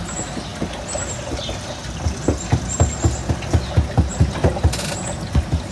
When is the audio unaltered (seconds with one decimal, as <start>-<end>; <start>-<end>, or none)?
0.0-5.7